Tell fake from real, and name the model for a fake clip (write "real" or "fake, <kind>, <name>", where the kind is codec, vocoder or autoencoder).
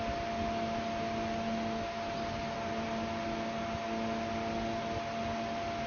real